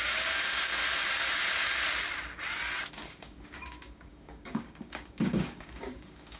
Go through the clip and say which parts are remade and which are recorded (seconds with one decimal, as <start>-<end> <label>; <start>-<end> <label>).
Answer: 0.0-0.8 remade; 0.8-2.9 recorded; 2.9-6.4 remade